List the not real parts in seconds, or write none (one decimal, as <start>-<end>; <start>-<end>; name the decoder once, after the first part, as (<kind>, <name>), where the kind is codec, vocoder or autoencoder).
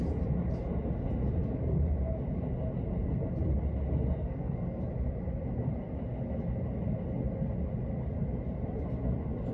4.2-4.8 (codec, SNAC)